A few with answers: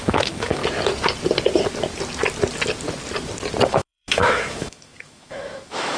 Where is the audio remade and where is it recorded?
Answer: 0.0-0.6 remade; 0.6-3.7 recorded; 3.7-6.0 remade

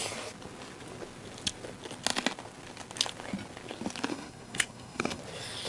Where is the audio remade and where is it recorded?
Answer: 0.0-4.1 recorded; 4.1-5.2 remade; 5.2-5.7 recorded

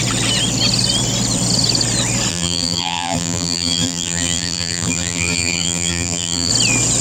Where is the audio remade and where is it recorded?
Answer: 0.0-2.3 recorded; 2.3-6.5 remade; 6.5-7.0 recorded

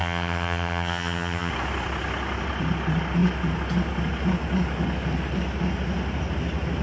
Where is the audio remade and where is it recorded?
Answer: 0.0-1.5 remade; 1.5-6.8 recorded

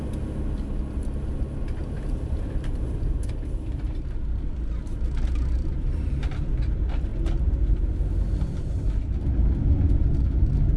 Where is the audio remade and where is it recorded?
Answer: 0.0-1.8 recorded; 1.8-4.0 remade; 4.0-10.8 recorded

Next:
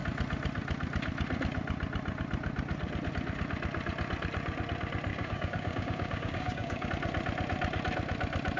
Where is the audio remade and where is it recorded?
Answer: 0.0-5.1 recorded; 5.1-6.9 remade; 6.9-8.6 recorded

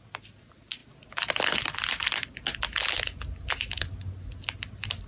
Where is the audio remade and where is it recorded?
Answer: 0.0-5.1 recorded

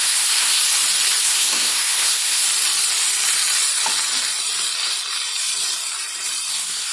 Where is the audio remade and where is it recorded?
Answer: 0.0-0.6 remade; 0.6-1.2 recorded; 1.2-2.4 remade; 2.4-6.5 recorded; 6.5-6.9 remade